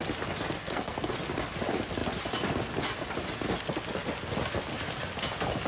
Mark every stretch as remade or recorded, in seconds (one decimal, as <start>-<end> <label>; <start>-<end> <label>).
0.0-0.6 recorded; 0.6-1.1 remade; 1.1-5.7 recorded